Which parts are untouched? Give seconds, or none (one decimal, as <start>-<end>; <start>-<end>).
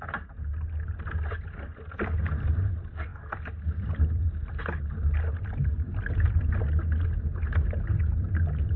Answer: 0.0-8.8